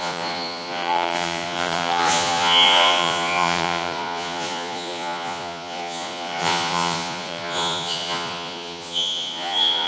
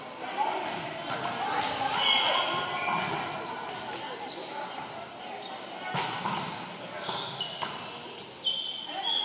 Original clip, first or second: second